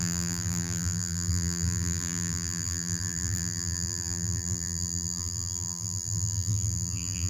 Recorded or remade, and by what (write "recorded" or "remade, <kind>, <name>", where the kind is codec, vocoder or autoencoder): remade, vocoder, BigVGAN v2